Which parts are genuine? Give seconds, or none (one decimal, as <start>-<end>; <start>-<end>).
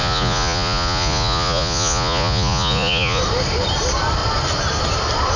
3.2-5.4